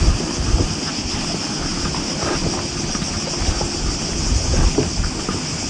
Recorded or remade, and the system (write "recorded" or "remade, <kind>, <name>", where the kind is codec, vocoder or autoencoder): recorded